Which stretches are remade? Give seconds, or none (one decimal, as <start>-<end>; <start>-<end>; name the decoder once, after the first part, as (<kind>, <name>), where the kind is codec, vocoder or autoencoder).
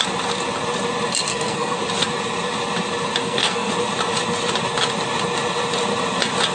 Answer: 1.3-1.8 (codec, SNAC); 3.2-3.7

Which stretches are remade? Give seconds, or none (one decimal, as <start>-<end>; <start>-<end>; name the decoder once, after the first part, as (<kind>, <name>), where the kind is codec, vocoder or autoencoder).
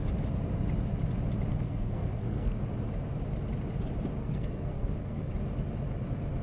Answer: 1.5-2.6 (codec, SNAC); 4.2-5.3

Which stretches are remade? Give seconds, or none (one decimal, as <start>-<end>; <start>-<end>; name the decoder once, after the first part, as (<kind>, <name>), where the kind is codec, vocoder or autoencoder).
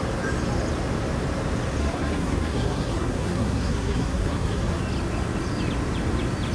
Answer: 1.8-4.8 (codec, SNAC)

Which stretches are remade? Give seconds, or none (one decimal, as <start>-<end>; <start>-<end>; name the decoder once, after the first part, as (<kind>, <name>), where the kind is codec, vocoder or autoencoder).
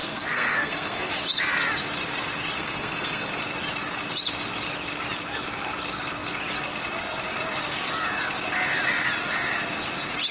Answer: 0.0-1.1 (codec, SNAC); 2.6-3.4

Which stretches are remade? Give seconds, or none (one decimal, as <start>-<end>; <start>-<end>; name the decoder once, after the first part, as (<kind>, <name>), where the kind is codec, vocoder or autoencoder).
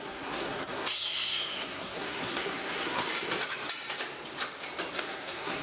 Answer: 0.0-3.0 (codec, SNAC); 4.9-5.6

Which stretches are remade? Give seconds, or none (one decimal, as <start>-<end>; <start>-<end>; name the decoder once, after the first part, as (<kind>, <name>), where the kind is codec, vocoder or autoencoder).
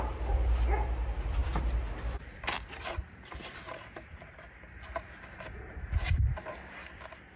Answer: none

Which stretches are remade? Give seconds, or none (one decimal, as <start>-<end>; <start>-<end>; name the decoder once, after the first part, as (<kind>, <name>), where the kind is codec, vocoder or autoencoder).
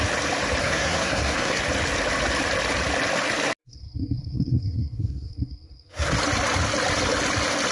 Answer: 0.6-1.6 (codec, SNAC); 3.6-6.1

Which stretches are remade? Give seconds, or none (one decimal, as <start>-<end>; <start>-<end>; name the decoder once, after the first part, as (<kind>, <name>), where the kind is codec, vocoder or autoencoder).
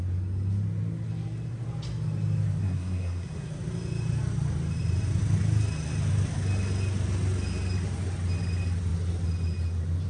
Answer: 2.6-3.5 (codec, SNAC)